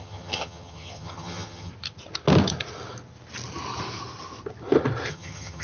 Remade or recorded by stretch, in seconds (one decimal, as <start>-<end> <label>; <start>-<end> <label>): 0.0-1.7 remade; 1.7-5.1 recorded; 5.1-5.6 remade